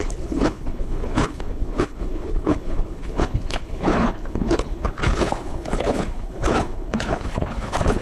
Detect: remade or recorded remade